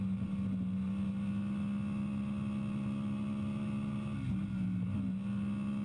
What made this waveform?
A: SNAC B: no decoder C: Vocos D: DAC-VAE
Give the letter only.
B